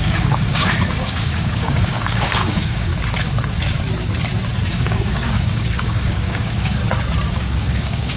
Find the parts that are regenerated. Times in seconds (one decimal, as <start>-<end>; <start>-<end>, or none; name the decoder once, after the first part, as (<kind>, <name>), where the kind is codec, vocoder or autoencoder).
0.0-2.9 (codec, DAC); 4.7-6.8; 7.3-8.2